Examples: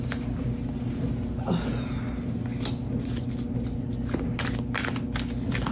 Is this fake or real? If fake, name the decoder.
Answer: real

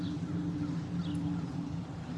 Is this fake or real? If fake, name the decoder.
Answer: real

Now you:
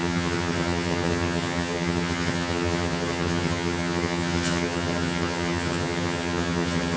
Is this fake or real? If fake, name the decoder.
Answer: fake, vocoder, HiFi-GAN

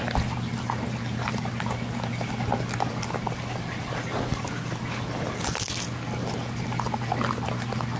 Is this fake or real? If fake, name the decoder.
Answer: real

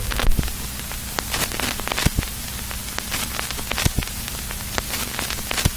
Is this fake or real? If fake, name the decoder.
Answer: real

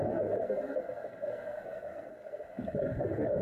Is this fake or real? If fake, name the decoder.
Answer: fake, codec, SNAC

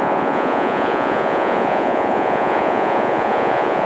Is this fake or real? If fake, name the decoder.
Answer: fake, vocoder, Vocos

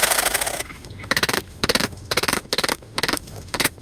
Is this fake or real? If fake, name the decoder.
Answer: fake, autoencoder, DAC-VAE